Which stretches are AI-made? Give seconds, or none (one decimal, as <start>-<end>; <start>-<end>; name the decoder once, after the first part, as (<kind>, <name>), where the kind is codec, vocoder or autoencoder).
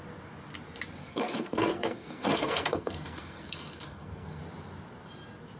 1.0-4.4 (codec, SNAC)